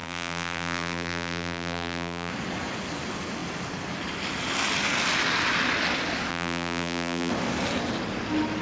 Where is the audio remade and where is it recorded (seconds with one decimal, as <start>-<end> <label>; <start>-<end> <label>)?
0.0-2.3 remade; 2.3-6.3 recorded; 6.3-7.3 remade; 7.3-8.6 recorded